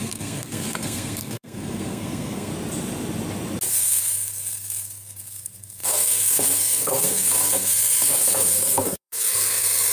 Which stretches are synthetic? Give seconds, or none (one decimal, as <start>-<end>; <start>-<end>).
0.0-2.5; 3.7-9.9